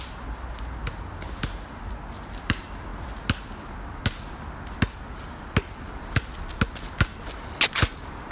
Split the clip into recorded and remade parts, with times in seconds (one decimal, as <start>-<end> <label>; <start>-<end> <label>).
0.0-8.3 recorded